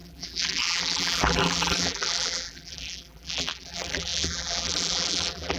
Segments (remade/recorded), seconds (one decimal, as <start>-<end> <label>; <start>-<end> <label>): 0.0-5.6 remade